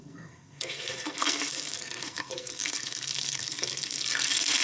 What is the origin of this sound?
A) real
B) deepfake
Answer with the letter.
B